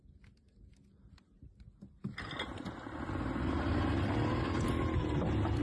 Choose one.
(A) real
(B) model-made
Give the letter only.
A